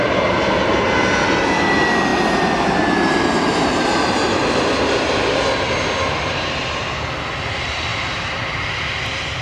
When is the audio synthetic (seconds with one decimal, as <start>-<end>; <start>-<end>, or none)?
7.9-8.7